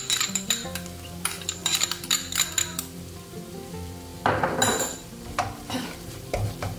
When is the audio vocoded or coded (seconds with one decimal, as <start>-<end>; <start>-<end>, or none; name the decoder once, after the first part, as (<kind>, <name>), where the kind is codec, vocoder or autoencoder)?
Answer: 0.0-6.8 (vocoder, BigVGAN v2)